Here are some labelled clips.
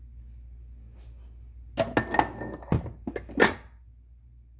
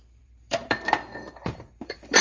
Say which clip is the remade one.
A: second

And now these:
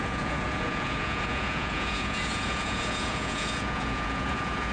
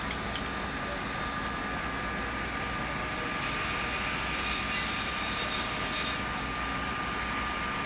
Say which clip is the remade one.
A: first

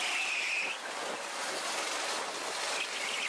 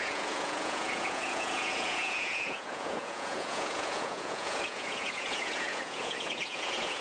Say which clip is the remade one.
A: second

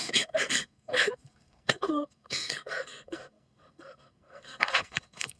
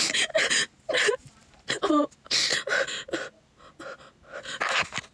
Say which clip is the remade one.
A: first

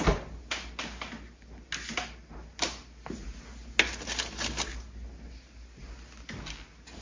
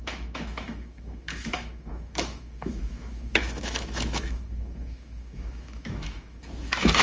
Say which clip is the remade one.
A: second